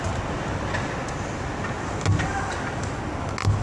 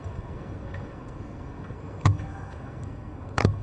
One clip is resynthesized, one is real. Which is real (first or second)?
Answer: first